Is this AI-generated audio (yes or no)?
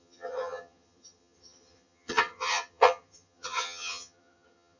yes